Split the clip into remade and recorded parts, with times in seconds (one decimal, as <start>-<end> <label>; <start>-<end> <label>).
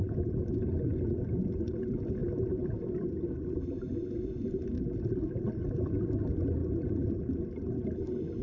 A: 0.0-8.4 recorded